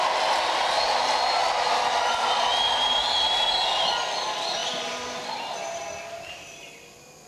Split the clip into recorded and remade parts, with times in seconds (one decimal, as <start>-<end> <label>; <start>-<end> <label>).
0.0-4.6 recorded; 4.6-5.8 remade; 5.8-7.3 recorded